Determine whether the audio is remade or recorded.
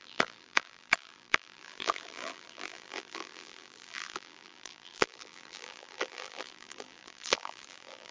remade